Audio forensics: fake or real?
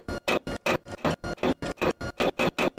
real